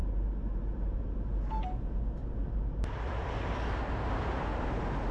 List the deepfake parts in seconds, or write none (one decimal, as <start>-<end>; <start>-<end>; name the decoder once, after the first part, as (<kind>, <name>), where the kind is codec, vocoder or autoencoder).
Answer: 0.0-1.5 (vocoder, BigVGAN v2)